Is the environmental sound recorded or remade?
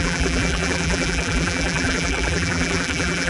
remade